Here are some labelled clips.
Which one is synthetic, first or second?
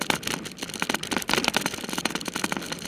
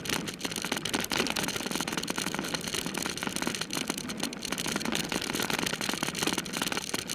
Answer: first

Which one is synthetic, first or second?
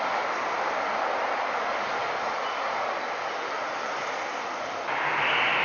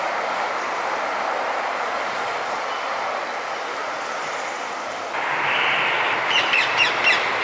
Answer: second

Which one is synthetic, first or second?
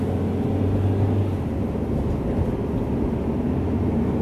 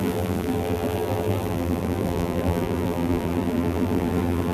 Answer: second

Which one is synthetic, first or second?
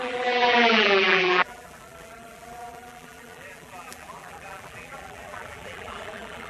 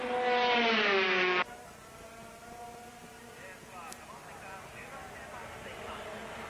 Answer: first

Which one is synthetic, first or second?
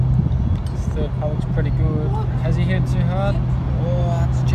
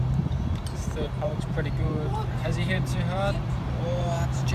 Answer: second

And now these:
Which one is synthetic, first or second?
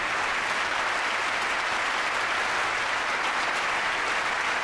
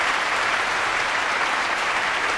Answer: second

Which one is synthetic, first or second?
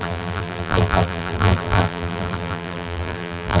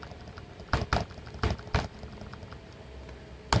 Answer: first